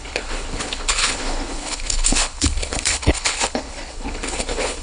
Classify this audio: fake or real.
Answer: fake